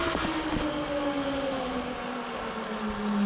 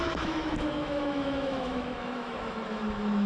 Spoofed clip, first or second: second